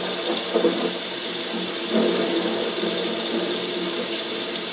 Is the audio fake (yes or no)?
no